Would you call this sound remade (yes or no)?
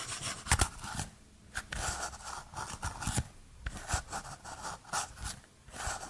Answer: no